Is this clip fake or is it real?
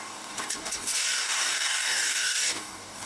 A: fake